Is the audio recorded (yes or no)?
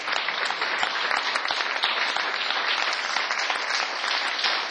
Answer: yes